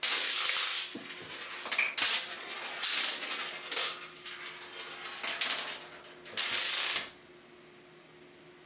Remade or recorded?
recorded